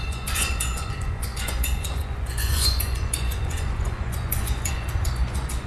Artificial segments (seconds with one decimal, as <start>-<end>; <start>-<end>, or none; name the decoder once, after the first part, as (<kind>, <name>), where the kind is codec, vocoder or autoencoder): 0.0-5.7 (vocoder, Vocos)

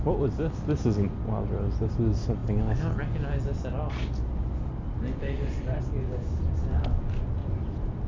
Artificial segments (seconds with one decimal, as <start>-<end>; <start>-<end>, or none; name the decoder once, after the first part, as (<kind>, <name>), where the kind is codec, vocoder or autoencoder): none

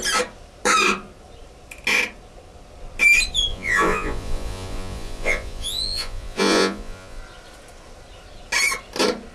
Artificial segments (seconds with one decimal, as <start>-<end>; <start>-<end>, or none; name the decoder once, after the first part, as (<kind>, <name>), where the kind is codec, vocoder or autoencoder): 3.5-7.2 (vocoder, Vocos)

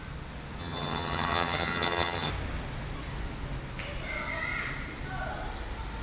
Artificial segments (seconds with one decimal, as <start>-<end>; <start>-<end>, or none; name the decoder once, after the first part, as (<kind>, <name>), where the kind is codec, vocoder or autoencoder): 0.6-2.3 (vocoder, HiFi-GAN)

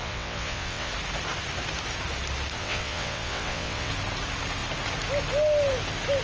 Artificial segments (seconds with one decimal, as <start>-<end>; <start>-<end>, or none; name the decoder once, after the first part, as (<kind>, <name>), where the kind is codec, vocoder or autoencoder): 0.0-0.9 (vocoder, WaveNeXt); 2.6-3.9